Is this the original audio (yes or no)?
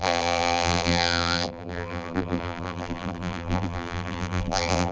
no